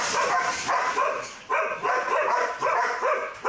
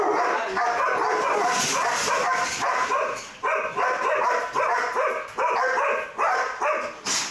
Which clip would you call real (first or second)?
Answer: second